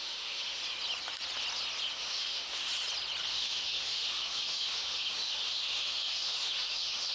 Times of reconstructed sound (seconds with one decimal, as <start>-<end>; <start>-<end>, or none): 0.0-0.6; 1.9-2.7; 3.3-7.1